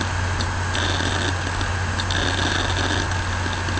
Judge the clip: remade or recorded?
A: recorded